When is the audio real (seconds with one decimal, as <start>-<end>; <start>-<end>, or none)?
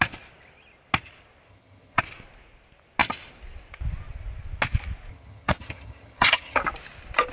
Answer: 0.0-1.5; 2.0-5.1; 6.6-7.3